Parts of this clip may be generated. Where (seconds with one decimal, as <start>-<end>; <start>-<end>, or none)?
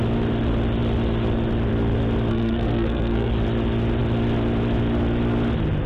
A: 2.3-3.3